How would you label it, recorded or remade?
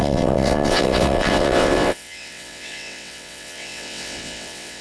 remade